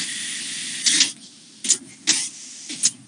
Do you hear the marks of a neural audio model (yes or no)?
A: no